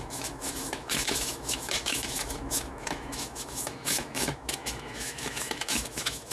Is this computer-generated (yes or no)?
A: yes